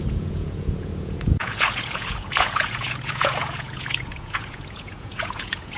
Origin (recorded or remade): remade